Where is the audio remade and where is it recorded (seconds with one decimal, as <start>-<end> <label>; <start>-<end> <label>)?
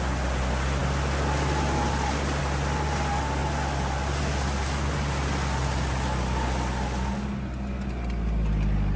0.0-9.0 recorded